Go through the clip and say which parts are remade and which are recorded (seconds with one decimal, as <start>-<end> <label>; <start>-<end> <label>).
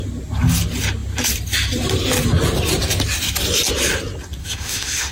0.0-4.4 recorded; 4.4-5.1 remade